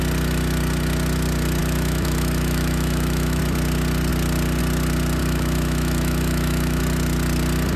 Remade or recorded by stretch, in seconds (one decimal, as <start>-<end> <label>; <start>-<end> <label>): 0.0-1.6 recorded; 1.6-3.4 remade; 3.4-5.2 recorded; 5.2-6.8 remade; 6.8-7.8 recorded